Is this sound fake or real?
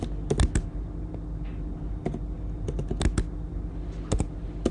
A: real